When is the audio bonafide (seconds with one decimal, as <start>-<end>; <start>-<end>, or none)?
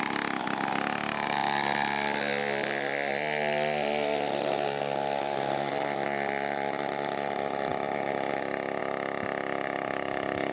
0.0-10.5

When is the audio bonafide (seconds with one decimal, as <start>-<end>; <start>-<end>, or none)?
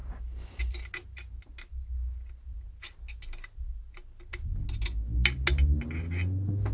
0.0-6.7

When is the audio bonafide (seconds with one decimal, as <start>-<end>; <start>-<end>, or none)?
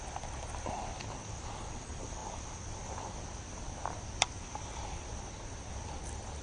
0.0-6.4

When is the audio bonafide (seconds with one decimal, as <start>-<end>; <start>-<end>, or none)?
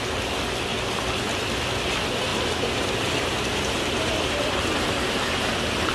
0.0-2.3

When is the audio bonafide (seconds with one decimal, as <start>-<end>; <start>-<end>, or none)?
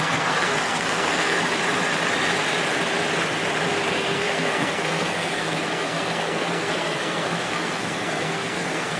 1.4-3.9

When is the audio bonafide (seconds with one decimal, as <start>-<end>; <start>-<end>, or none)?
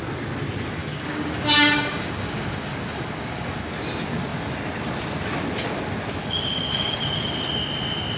0.0-0.8; 3.7-6.2; 7.0-8.2